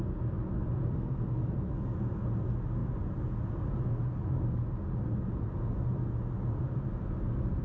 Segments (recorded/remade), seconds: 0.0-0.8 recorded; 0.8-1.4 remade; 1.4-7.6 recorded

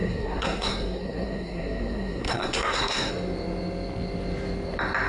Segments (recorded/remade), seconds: 0.0-3.1 remade; 3.1-5.1 recorded

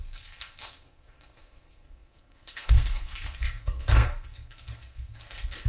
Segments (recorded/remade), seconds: 0.0-5.7 remade